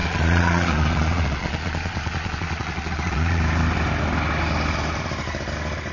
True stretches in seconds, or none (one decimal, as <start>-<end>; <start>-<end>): 3.4-5.9